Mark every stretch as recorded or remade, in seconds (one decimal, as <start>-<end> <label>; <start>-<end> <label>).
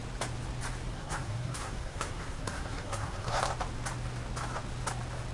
0.0-0.9 recorded; 0.9-3.4 remade; 3.4-5.3 recorded